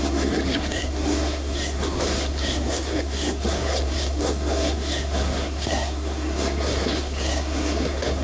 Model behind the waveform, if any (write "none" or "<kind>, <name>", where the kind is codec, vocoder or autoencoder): codec, SNAC